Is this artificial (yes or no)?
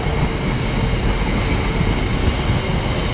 no